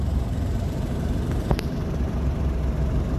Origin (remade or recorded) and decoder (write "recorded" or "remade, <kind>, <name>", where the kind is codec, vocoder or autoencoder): remade, vocoder, BigVGAN v2